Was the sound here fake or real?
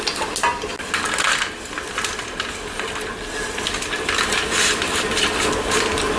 real